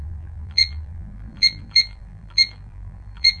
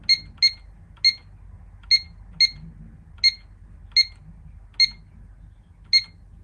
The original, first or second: second